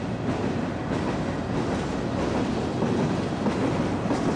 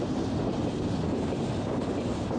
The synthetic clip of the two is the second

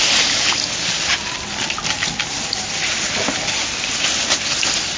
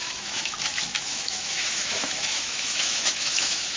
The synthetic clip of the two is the second